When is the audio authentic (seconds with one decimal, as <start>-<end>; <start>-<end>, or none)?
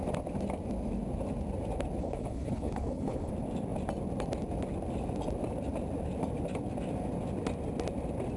0.0-2.0; 3.3-8.4